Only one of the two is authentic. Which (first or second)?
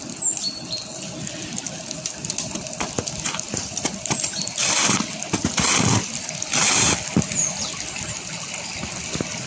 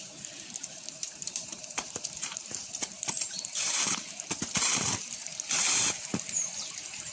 first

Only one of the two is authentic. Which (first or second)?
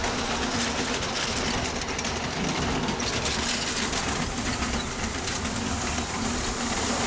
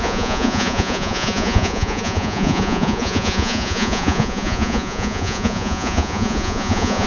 first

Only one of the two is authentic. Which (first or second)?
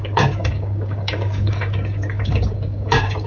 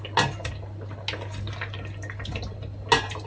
second